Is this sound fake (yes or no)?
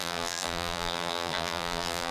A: yes